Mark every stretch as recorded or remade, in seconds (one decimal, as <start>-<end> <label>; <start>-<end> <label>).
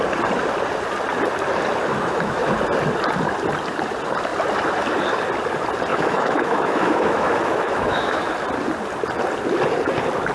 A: 0.0-1.9 recorded; 1.9-2.5 remade; 2.5-5.9 recorded; 5.9-8.3 remade; 8.3-10.3 recorded